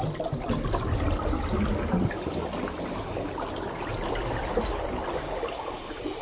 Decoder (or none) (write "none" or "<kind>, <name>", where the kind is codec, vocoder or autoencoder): none